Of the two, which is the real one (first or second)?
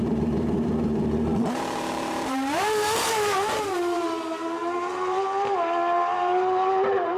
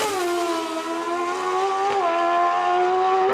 second